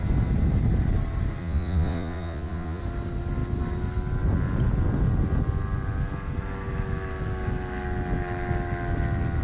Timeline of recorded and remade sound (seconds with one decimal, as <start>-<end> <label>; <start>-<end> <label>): 0.0-1.4 recorded; 1.4-2.8 remade; 2.8-9.4 recorded